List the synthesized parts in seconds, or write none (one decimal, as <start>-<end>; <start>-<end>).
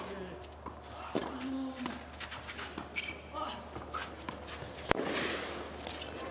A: none